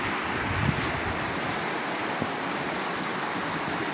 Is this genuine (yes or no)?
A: yes